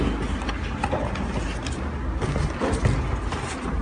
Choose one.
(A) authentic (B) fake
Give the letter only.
A